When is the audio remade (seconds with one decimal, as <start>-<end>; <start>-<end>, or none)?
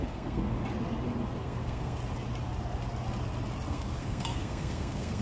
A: 0.0-0.6; 1.4-2.0; 3.7-5.2